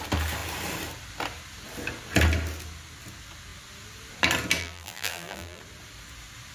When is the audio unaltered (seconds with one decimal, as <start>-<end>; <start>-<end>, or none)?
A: 0.0-4.6; 5.6-6.5